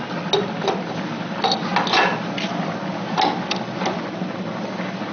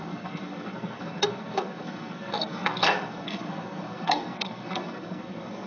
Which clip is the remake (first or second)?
second